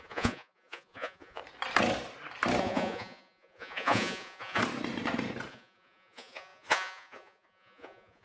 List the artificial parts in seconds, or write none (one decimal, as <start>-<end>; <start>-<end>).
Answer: 0.0-1.4; 2.6-4.6; 5.5-8.2